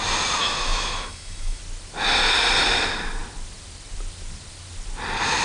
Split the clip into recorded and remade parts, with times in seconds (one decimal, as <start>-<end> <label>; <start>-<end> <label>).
0.0-0.4 recorded; 0.4-1.6 remade; 1.6-5.4 recorded